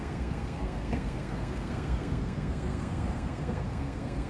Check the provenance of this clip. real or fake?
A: fake